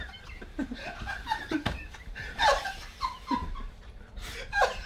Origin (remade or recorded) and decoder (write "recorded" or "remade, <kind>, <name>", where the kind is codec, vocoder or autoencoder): remade, vocoder, BigVGAN v2